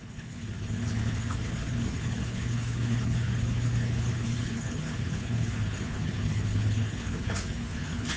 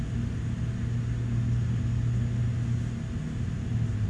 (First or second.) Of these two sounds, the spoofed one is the first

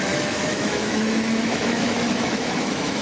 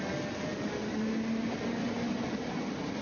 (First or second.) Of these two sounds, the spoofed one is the first